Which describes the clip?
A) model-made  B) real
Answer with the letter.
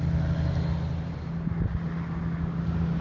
B